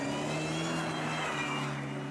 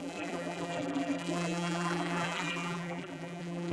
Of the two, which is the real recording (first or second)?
first